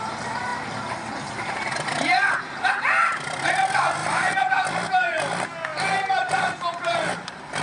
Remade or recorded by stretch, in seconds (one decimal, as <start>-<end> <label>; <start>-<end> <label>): 0.0-4.0 recorded; 4.0-4.5 remade; 4.5-5.7 recorded; 5.7-7.6 remade